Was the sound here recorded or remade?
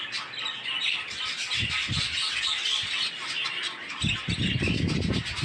recorded